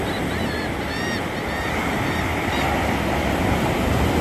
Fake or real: real